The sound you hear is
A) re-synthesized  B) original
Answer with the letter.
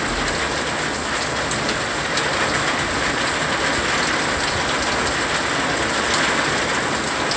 B